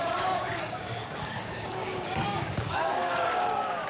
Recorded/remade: remade